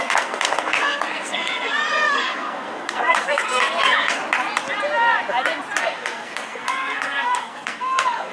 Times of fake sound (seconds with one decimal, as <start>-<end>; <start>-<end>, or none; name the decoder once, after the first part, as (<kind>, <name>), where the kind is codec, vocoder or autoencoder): 0.0-4.2 (codec, SNAC); 5.8-8.3